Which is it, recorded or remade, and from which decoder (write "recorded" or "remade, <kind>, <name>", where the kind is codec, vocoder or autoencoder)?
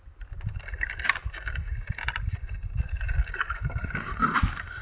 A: recorded